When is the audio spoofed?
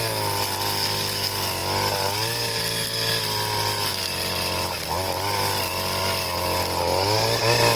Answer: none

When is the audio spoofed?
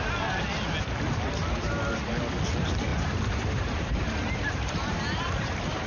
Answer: 2.9-5.9 (vocoder, BigVGAN v2)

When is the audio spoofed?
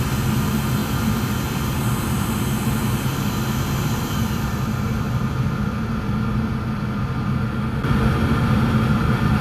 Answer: 0.8-5.5 (vocoder, BigVGAN v2)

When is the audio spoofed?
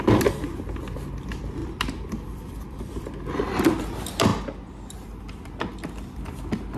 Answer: 1.6-3.0 (vocoder, BigVGAN v2)